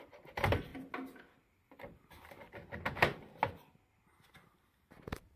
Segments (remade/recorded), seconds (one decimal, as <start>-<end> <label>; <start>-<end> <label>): 0.0-5.4 recorded